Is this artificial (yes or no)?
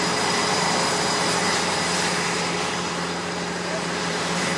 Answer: yes